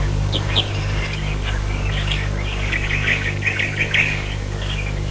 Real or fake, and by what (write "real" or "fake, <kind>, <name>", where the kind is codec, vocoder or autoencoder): fake, codec, DAC